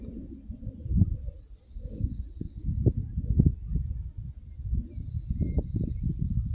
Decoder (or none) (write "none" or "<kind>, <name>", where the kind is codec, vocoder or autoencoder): none